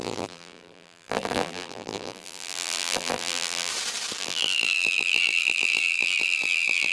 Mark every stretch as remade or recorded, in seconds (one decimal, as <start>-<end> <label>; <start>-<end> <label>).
0.0-3.7 remade; 3.7-4.2 recorded; 4.2-6.9 remade